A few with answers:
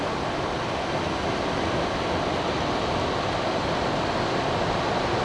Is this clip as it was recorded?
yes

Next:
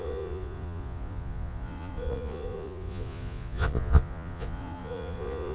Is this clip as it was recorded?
no